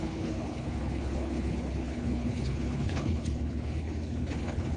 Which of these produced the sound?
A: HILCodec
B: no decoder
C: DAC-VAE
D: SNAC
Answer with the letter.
A